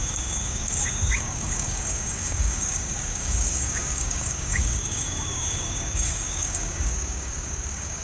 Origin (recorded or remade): remade